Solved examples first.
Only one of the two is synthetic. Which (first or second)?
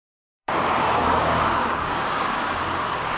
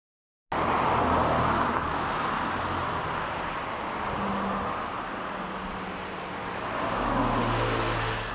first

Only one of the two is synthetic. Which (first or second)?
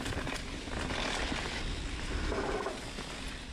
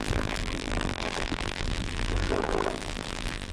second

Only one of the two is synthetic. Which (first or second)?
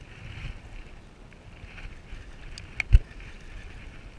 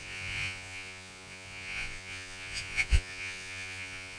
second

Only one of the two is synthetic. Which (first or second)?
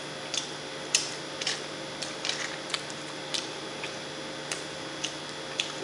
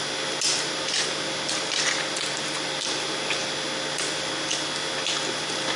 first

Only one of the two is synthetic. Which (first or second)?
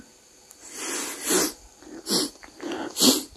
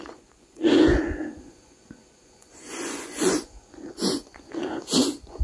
second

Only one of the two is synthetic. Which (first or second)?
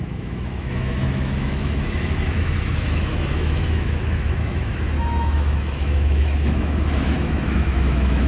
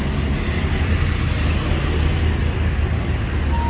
first